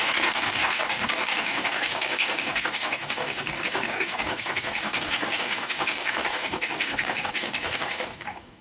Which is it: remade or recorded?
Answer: remade